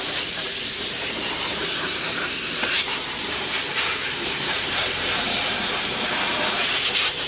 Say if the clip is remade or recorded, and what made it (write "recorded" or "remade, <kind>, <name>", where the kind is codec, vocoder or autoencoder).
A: remade, vocoder, BigVGAN v2